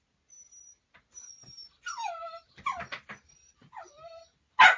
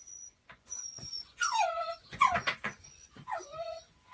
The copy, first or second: second